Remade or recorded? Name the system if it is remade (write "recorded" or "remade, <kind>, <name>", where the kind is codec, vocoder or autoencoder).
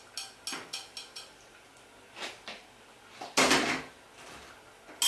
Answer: recorded